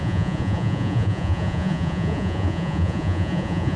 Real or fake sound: fake